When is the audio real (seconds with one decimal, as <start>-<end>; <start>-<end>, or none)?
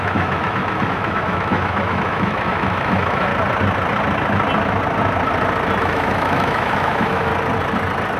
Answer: 3.3-5.8; 7.3-8.2